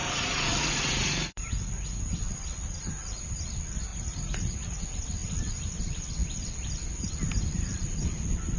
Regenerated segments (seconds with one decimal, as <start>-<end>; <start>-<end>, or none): 0.0-2.0; 3.9-4.8